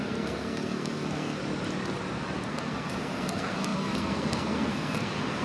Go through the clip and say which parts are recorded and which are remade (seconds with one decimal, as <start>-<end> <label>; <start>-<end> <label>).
0.0-1.4 remade; 1.4-2.5 recorded; 2.5-5.4 remade